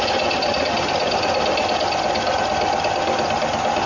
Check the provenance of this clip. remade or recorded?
recorded